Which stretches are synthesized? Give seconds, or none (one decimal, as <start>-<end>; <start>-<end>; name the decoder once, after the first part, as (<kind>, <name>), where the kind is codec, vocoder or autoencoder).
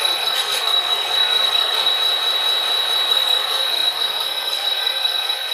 0.0-1.9 (codec, SNAC); 3.1-5.5